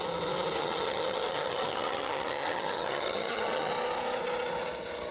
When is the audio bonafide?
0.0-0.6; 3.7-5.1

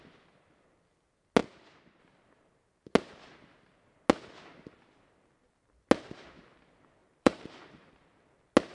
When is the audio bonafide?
0.0-7.0; 7.9-8.7

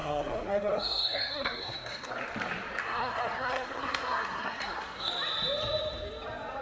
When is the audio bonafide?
2.1-2.8; 5.1-6.6

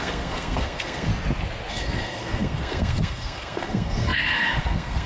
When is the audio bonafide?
1.1-1.7

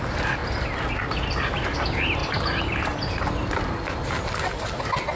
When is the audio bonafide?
0.0-2.2; 3.1-5.2

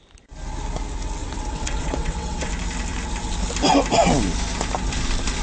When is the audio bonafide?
0.0-1.2; 2.5-5.4

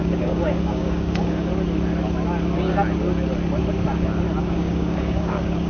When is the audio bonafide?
1.5-4.4